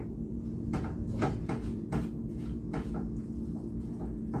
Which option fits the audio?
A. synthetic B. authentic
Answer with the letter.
A